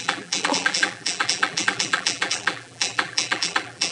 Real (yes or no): no